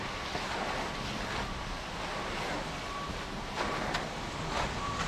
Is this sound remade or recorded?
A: recorded